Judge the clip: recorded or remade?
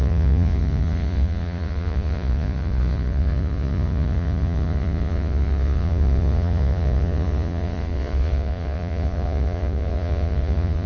remade